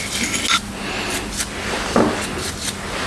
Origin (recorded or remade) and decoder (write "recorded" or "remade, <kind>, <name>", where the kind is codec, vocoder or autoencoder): recorded